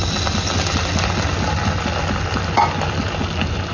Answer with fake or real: real